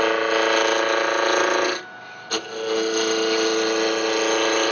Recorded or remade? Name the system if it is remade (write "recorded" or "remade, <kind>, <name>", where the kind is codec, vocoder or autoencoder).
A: recorded